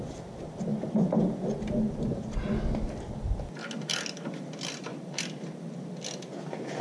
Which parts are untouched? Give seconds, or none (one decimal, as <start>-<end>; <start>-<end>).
0.0-6.8